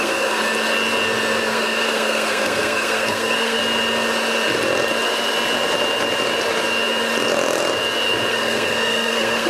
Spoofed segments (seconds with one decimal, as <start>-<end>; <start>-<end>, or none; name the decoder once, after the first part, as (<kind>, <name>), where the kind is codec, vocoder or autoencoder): 0.0-0.4 (codec, SNAC); 1.4-3.6; 8.3-9.5